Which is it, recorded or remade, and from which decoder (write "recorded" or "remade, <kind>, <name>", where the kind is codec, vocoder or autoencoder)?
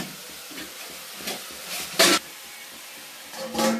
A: recorded